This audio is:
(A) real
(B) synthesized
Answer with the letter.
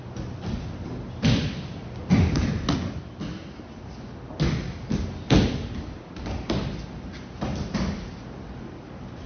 A